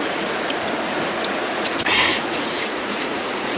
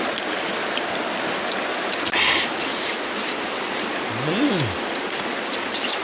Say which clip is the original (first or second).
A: second